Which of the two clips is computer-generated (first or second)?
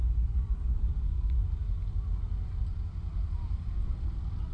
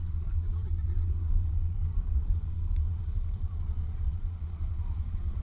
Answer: second